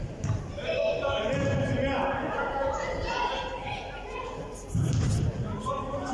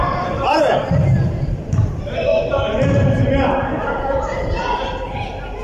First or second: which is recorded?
first